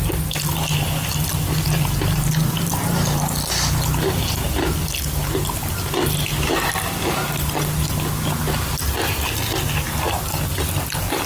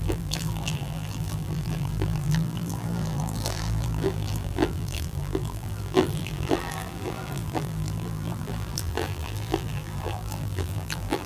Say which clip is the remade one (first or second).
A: second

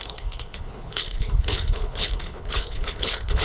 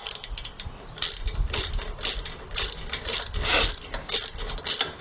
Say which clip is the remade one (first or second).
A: first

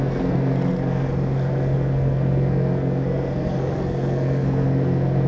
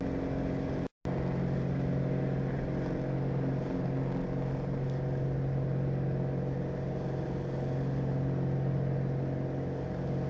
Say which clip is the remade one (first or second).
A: first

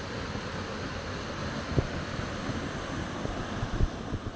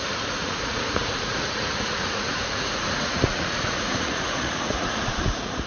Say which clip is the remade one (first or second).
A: second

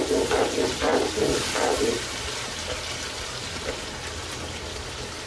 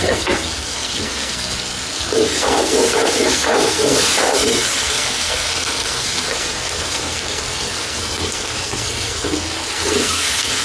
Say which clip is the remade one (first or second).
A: second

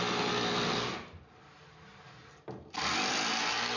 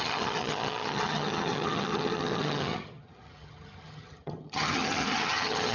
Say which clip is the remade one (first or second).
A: second